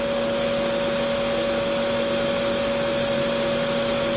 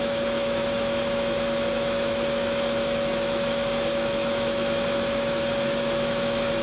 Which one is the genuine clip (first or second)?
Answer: first